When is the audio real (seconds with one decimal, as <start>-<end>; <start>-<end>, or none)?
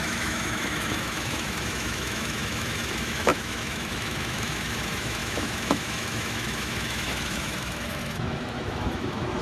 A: none